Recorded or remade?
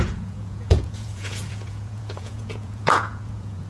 remade